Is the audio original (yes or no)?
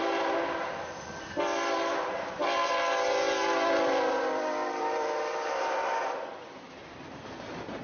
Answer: no